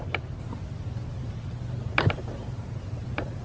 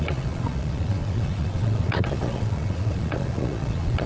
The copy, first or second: second